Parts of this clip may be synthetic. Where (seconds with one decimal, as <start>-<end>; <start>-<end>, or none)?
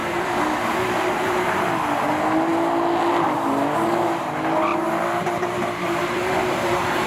0.0-1.7; 4.7-7.1